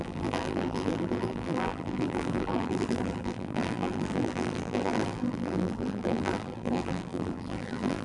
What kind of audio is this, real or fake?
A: fake